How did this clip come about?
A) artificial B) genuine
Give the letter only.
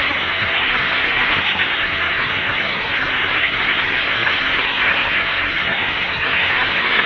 A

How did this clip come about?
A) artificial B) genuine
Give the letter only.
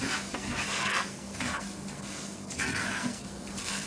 A